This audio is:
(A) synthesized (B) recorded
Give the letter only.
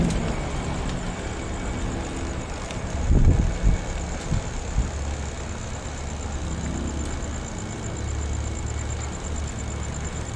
B